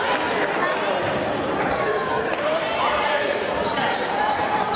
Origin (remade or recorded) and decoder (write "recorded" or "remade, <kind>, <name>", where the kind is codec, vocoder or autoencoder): remade, vocoder, BigVGAN v2